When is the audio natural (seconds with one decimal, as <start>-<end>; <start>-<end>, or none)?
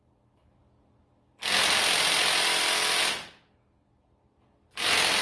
0.0-5.2